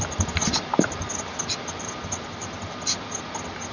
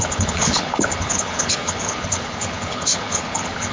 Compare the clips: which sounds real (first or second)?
first